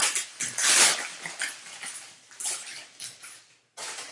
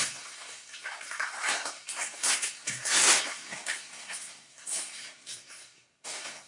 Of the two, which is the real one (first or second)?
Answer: first